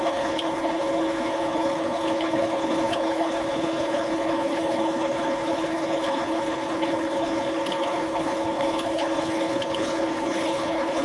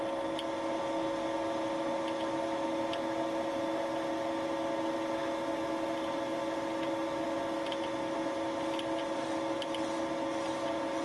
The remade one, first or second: first